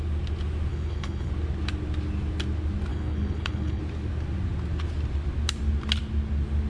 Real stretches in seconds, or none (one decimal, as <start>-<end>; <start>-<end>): 0.0-0.7; 1.3-2.9; 3.8-6.7